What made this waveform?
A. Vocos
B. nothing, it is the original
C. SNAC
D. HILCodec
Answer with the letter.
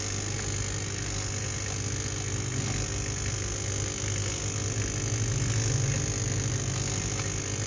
B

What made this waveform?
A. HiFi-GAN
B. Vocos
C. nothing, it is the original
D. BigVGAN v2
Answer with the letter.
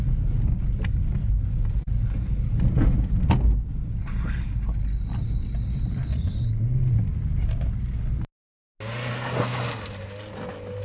C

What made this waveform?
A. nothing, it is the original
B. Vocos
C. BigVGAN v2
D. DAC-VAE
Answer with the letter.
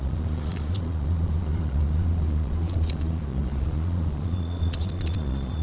B